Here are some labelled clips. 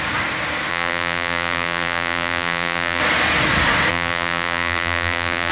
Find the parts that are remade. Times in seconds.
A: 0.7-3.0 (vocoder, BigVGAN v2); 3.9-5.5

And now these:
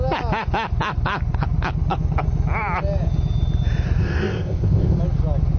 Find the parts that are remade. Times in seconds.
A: 4.0-5.0 (codec, ZipCodec)

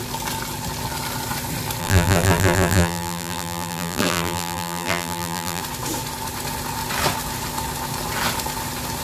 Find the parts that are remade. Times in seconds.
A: 1.8-5.6 (vocoder, BigVGAN v2)

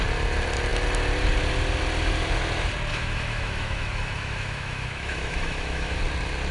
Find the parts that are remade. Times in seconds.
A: 2.9-6.0 (autoencoder, DAC-VAE)